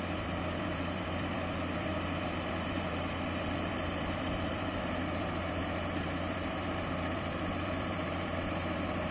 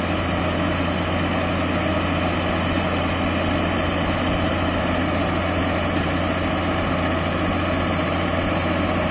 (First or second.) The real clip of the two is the second